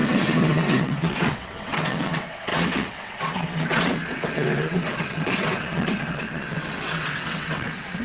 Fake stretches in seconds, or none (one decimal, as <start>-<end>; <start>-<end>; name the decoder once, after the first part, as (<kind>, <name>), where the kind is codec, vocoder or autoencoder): 0.0-8.0 (vocoder, WaveNeXt)